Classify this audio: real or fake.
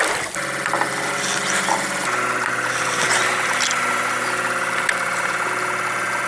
real